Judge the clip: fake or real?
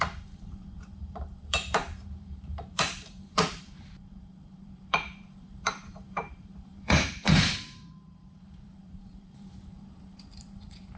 fake